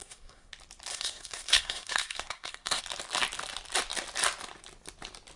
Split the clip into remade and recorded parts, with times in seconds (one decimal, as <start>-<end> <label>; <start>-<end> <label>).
0.0-0.5 remade; 0.5-0.9 recorded; 0.9-2.8 remade; 2.8-5.4 recorded